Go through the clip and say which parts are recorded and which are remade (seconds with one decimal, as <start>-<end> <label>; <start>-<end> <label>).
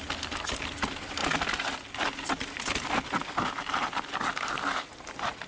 0.0-5.5 recorded